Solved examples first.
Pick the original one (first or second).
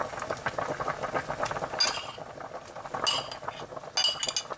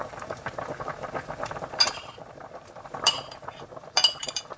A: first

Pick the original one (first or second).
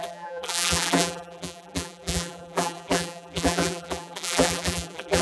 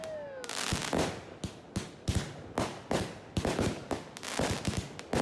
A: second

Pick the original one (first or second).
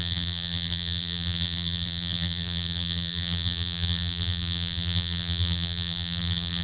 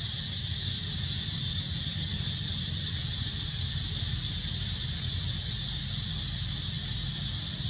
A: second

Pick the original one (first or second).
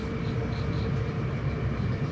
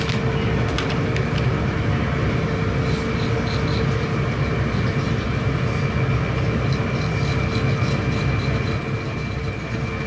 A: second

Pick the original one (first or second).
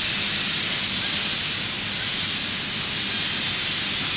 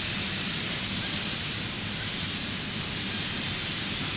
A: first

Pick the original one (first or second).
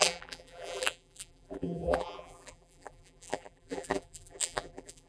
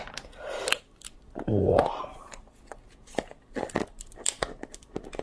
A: second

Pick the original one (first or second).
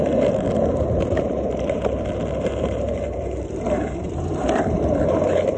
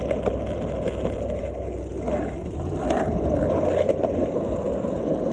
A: second